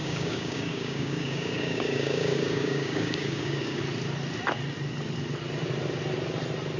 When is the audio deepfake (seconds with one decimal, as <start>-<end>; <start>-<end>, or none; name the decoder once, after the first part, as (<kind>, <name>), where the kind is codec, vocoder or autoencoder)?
0.0-3.8 (codec, DAC)